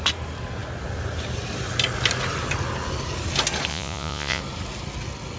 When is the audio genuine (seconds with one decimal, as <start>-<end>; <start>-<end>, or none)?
0.0-3.7; 4.4-5.4